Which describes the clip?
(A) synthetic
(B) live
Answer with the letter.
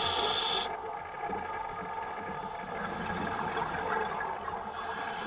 B